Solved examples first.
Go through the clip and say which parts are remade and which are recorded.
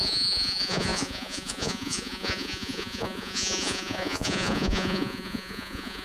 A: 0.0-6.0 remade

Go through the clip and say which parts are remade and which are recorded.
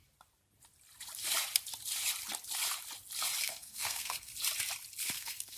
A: 0.0-3.4 recorded; 3.4-4.3 remade; 4.3-5.0 recorded; 5.0-5.6 remade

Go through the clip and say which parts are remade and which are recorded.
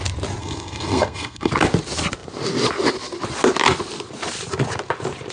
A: 0.0-0.4 recorded; 0.4-1.5 remade; 1.5-5.3 recorded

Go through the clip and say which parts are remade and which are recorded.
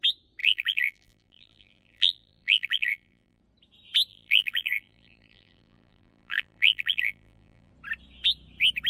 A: 0.0-0.4 recorded; 0.4-3.4 remade; 3.4-4.1 recorded; 4.1-7.7 remade; 7.7-8.9 recorded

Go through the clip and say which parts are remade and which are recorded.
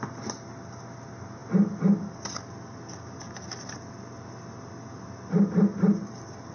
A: 0.0-6.5 recorded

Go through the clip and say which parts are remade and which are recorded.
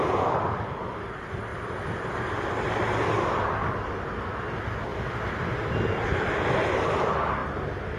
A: 0.0-8.0 recorded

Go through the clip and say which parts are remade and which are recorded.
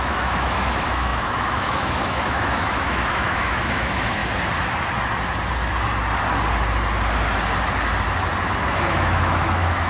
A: 0.0-4.2 remade; 4.2-8.6 recorded; 8.6-9.9 remade